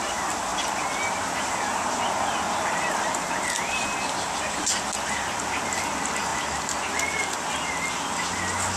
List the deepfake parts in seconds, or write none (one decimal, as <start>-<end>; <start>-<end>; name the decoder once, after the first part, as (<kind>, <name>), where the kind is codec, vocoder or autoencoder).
none